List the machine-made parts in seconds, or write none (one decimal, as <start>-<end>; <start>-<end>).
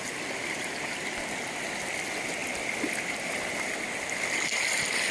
none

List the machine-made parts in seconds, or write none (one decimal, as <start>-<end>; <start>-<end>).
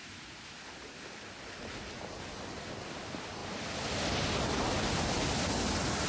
none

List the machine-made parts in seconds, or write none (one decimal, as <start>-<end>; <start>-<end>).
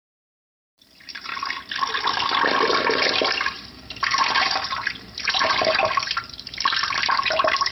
0.0-1.3; 2.8-7.7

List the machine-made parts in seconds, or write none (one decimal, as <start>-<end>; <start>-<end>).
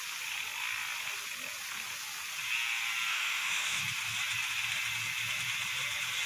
3.1-3.8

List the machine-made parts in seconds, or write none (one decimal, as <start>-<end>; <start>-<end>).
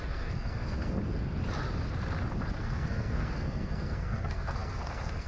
0.0-1.0; 2.6-5.3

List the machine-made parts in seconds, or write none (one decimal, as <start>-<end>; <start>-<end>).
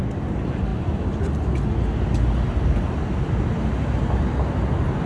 none